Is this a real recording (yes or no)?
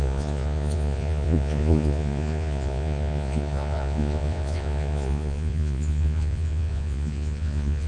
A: no